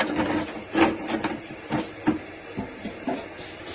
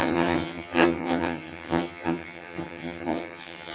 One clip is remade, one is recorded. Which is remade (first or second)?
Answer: second